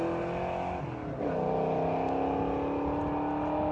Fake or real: real